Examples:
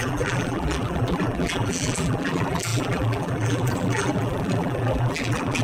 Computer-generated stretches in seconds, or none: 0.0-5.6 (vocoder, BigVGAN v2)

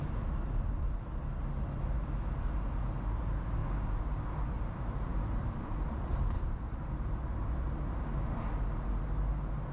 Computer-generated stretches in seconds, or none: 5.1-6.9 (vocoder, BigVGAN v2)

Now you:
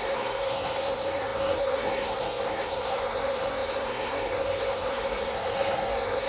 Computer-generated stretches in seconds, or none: 0.0-6.3 (codec, SNAC)

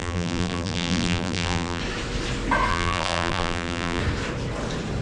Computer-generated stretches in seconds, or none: 0.0-1.8 (vocoder, BigVGAN v2); 2.7-4.0